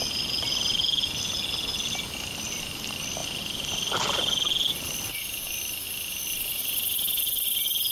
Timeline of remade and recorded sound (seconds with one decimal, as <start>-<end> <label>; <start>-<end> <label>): 0.0-7.9 recorded